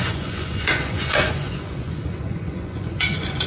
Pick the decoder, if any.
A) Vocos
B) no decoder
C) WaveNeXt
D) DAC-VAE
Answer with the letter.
A